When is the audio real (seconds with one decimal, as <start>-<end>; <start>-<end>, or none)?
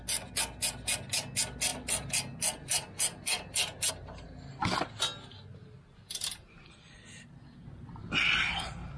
0.0-9.0